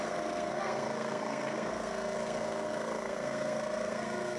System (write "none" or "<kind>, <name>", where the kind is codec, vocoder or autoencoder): codec, SNAC